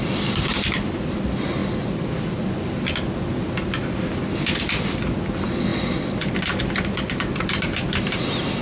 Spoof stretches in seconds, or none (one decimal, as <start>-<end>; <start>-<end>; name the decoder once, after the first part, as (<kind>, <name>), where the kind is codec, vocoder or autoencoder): none